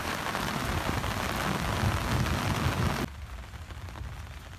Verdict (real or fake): real